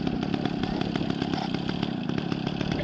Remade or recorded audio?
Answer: recorded